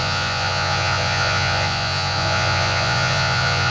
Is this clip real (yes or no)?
no